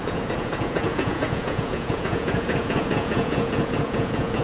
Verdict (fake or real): fake